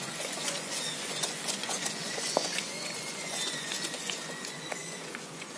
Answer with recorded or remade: remade